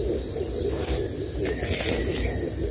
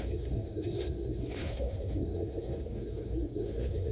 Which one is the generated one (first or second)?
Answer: second